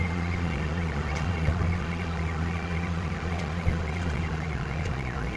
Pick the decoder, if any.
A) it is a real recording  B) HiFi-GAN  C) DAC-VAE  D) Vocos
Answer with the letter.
D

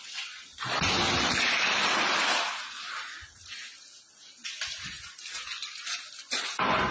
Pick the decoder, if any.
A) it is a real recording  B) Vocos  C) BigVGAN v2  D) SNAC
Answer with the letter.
A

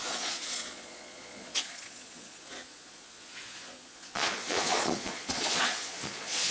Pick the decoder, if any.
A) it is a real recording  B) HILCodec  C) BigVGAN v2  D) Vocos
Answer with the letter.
D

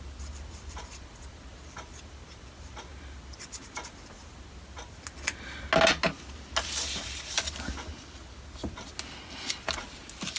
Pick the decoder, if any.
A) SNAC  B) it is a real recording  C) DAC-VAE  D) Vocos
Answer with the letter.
B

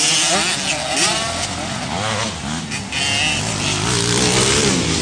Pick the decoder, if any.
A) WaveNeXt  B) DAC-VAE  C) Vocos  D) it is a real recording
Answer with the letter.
D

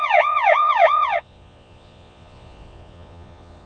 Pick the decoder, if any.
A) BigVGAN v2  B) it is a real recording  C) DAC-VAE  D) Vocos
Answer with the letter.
D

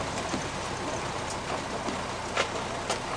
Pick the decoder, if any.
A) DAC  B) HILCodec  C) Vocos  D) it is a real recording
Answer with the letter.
D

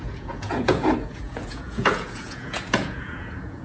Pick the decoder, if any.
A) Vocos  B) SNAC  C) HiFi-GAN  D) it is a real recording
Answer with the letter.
A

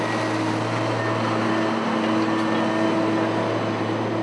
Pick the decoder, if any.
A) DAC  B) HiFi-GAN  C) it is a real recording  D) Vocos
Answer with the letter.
C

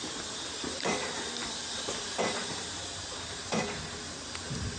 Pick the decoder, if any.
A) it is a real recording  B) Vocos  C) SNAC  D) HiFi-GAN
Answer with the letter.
A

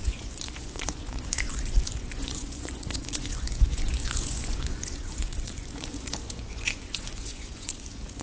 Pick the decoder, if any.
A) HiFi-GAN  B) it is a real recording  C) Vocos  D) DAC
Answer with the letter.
C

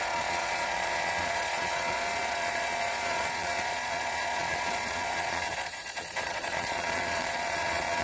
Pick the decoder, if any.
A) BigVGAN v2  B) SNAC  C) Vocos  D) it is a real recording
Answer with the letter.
C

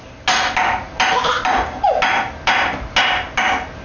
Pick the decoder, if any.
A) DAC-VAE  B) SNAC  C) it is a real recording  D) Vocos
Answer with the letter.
C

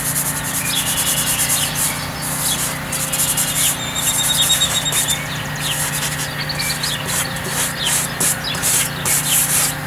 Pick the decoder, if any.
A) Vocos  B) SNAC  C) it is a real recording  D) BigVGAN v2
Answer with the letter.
C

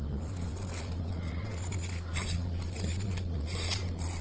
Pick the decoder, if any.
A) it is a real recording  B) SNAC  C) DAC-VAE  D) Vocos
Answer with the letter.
D